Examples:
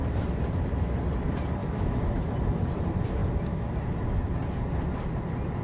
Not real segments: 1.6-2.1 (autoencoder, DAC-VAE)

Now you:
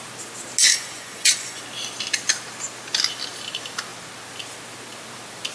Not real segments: 0.7-1.6 (vocoder, Vocos)

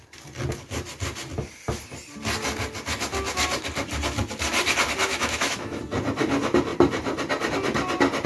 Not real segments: 5.0-5.8 (autoencoder, DAC-VAE)

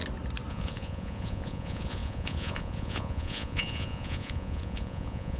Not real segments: 0.5-5.4 (vocoder, Vocos)

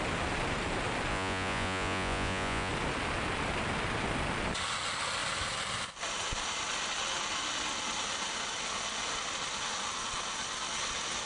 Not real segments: 1.1-2.7 (vocoder, Vocos)

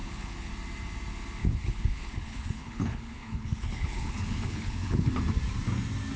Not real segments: 0.0-0.5 (codec, HILCodec); 1.4-5.1

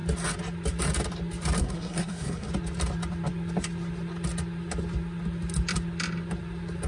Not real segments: 1.6-2.5 (codec, SNAC)